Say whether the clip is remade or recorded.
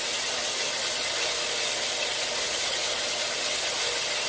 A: recorded